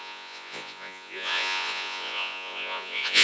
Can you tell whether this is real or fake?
fake